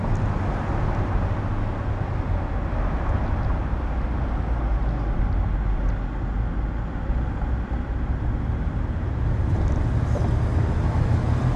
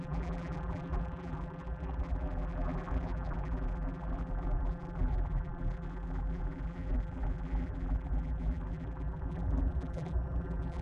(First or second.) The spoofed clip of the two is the second